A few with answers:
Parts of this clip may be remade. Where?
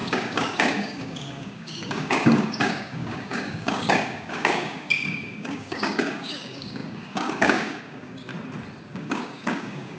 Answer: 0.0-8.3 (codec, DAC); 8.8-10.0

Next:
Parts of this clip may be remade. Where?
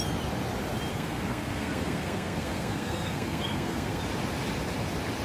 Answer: 0.9-4.0 (codec, SNAC)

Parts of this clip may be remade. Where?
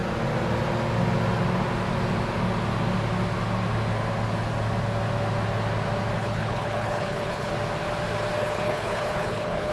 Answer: 6.2-7.5 (codec, HILCodec); 8.4-9.7